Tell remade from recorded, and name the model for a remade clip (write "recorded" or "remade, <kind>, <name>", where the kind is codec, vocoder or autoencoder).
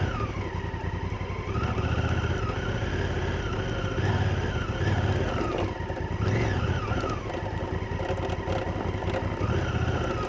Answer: recorded